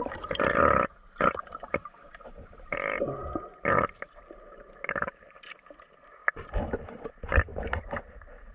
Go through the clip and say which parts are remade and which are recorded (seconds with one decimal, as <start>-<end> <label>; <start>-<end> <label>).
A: 0.0-6.2 remade; 6.2-7.1 recorded; 7.1-8.5 remade